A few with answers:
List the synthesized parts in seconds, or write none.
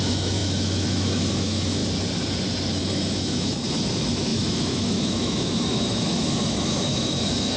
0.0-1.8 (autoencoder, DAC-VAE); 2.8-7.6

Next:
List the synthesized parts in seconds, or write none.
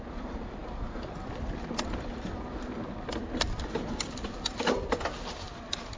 none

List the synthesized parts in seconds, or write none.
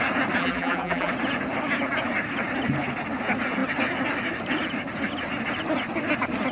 0.4-1.1 (vocoder, BigVGAN v2)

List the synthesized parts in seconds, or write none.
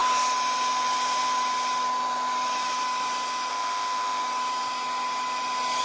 3.5-4.2 (autoencoder, DAC-VAE)